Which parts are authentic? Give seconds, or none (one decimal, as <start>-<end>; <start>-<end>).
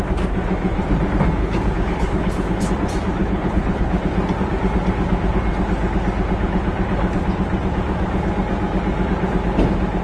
0.0-1.4; 2.7-3.2; 4.0-10.0